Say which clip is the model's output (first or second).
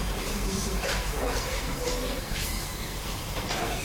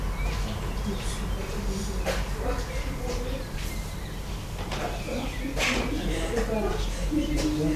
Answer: first